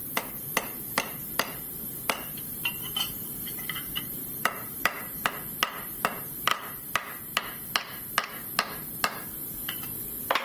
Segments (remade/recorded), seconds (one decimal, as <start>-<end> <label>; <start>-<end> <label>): 0.0-5.3 remade; 5.3-10.4 recorded